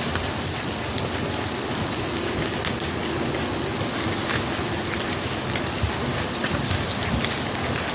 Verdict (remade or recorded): recorded